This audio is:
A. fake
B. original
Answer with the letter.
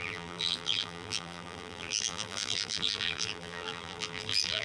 A